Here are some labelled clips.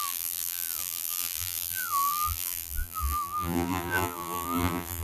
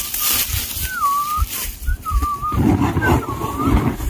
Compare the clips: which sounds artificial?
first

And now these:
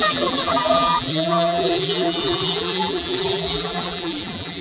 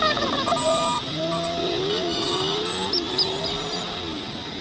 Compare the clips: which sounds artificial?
first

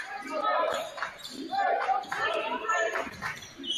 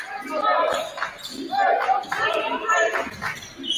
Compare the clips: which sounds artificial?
first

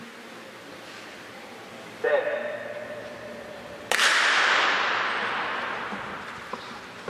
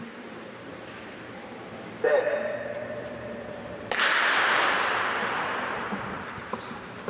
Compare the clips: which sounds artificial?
second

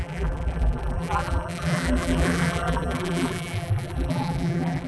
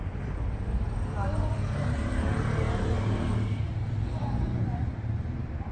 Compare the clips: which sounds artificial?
first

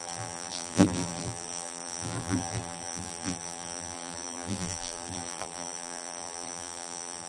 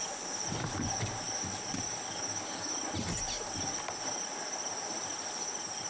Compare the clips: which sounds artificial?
first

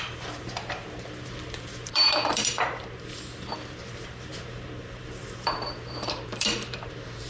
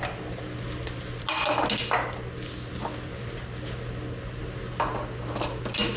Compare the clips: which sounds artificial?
first